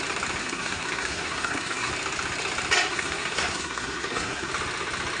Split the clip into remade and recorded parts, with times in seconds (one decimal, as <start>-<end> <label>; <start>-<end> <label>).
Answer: 0.0-0.4 recorded; 0.4-1.9 remade; 1.9-2.9 recorded; 2.9-4.5 remade; 4.5-5.2 recorded